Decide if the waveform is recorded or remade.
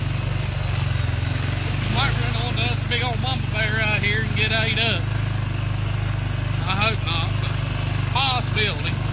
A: recorded